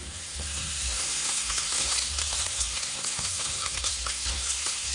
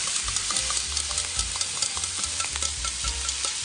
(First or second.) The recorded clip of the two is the second